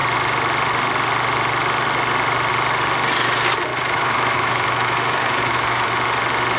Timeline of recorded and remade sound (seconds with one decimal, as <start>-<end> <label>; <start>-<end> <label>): 0.0-3.7 recorded; 3.7-5.9 remade; 5.9-6.6 recorded